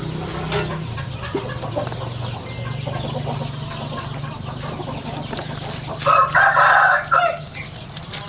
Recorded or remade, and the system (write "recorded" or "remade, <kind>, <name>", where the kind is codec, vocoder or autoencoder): recorded